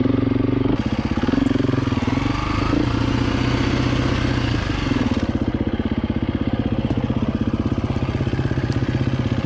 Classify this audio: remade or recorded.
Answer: recorded